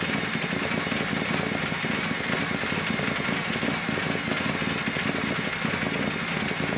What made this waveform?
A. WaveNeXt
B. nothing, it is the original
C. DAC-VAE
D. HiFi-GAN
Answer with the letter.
B